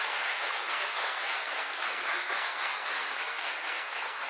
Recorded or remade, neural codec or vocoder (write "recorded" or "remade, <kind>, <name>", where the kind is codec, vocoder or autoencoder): remade, codec, SNAC